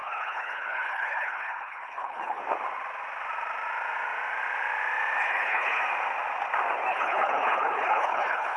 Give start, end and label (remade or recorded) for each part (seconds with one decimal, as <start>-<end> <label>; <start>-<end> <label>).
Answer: 0.0-2.4 remade; 2.4-5.2 recorded; 5.2-5.8 remade; 5.8-6.9 recorded; 6.9-8.6 remade

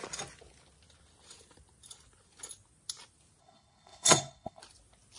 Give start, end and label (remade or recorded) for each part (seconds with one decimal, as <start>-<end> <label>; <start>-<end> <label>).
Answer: 0.0-3.4 recorded; 3.4-4.6 remade; 4.6-5.2 recorded

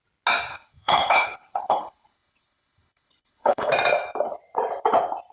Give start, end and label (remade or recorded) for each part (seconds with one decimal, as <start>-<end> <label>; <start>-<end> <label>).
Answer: 0.0-0.5 recorded; 0.5-3.7 remade; 3.7-5.3 recorded

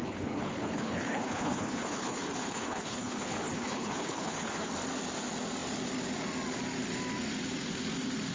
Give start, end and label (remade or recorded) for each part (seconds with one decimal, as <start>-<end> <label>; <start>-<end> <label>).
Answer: 0.0-4.7 remade; 4.7-8.3 recorded

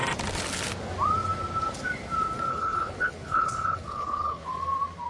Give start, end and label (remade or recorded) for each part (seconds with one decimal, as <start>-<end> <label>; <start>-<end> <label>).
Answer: 0.0-2.5 recorded; 2.5-4.5 remade; 4.5-5.1 recorded

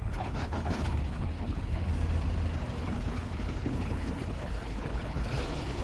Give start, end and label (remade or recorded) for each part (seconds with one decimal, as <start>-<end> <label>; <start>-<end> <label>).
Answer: 0.0-1.9 remade; 1.9-2.9 recorded; 2.9-5.8 remade

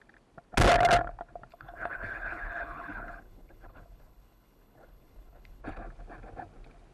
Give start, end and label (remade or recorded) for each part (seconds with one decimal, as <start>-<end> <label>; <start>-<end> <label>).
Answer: 0.0-1.5 recorded; 1.5-5.6 remade; 5.6-6.9 recorded

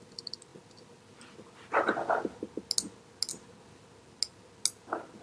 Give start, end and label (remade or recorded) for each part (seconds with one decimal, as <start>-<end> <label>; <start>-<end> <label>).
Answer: 0.0-5.2 recorded